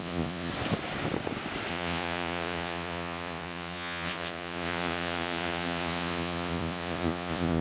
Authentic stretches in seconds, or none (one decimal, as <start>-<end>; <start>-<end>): 0.5-1.7